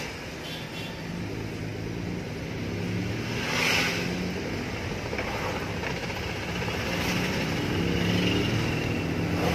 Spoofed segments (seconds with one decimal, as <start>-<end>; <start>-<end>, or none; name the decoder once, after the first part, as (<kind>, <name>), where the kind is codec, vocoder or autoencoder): none